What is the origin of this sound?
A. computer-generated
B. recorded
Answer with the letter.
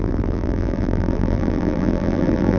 A